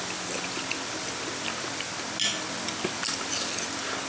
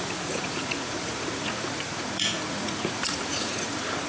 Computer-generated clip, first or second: second